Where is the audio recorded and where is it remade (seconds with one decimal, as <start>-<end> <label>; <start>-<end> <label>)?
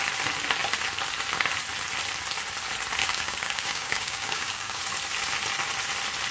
0.0-3.0 recorded; 3.0-4.8 remade; 4.8-6.3 recorded